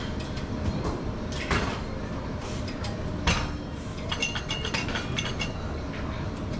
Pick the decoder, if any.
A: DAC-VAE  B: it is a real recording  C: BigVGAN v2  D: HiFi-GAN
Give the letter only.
C